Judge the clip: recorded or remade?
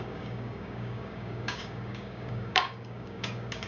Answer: remade